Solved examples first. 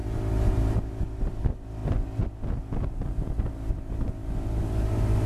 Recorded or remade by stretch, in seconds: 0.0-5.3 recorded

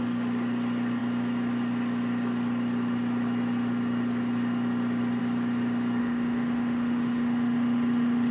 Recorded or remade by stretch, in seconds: 0.0-6.0 recorded; 6.0-8.3 remade